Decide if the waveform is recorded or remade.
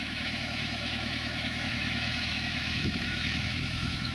remade